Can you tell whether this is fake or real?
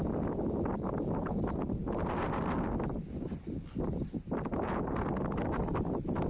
real